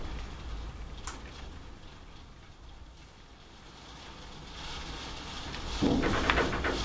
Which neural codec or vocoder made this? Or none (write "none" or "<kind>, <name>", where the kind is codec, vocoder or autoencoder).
none